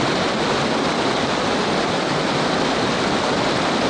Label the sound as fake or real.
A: real